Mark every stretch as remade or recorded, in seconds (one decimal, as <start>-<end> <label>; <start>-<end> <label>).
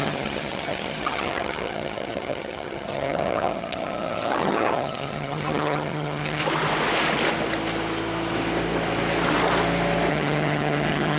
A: 0.0-6.4 remade; 6.4-10.1 recorded; 10.1-11.2 remade